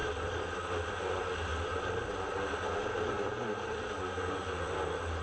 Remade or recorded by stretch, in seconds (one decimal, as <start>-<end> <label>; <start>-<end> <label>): 0.0-5.2 recorded